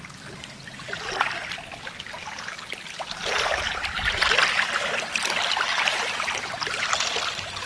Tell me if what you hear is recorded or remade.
recorded